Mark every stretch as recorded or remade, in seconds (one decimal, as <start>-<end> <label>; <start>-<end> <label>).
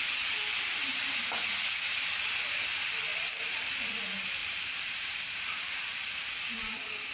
0.0-0.7 recorded; 0.7-1.2 remade; 1.2-3.1 recorded; 3.1-3.9 remade; 3.9-4.4 recorded; 4.4-5.7 remade; 5.7-7.1 recorded